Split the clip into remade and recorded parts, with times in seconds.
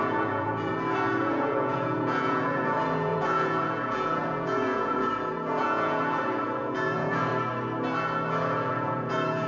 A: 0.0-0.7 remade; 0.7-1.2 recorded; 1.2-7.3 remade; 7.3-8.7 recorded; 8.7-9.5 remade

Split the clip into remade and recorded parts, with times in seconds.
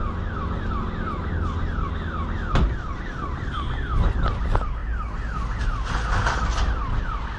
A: 0.0-7.4 recorded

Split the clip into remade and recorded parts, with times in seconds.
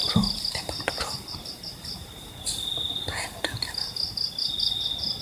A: 0.0-2.3 remade; 2.3-5.2 recorded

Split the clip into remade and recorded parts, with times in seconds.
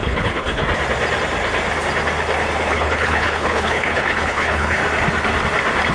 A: 0.0-0.6 remade; 0.6-2.7 recorded; 2.7-4.8 remade; 4.8-5.9 recorded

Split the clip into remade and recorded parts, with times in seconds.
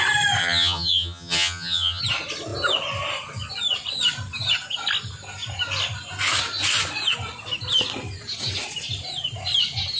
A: 0.0-0.4 recorded; 0.4-2.0 remade; 2.0-10.0 recorded